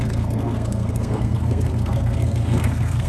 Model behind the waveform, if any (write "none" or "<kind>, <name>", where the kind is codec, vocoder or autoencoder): codec, SNAC